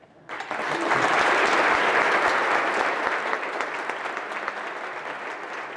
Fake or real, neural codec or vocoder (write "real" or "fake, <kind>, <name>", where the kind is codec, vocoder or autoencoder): real